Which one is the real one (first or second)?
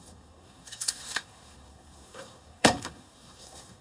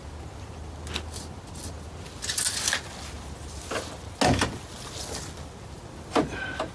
second